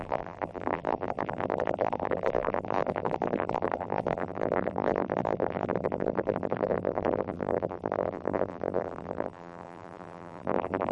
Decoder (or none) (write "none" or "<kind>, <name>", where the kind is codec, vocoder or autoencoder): vocoder, BigVGAN v2